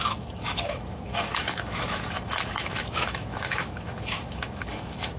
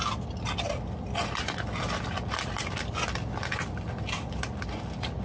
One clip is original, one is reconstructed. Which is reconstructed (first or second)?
first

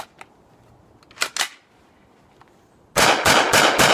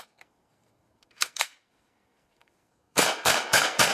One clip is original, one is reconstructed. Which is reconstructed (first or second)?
second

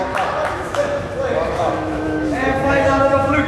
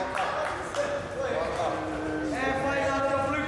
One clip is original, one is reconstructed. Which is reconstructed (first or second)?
first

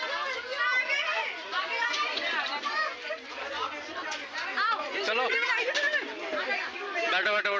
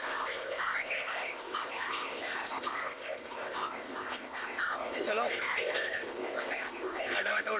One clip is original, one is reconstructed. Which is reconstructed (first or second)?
second